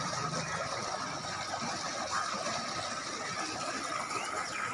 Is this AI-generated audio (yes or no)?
no